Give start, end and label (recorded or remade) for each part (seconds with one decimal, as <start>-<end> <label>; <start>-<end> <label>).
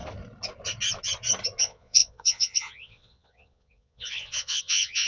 0.0-1.6 recorded; 1.6-5.1 remade